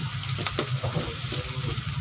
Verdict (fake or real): real